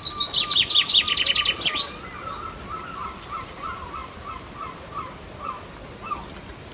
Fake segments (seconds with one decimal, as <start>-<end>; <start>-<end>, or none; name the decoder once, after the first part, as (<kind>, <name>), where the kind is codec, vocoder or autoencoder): none